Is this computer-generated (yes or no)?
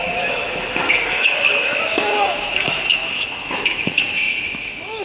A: yes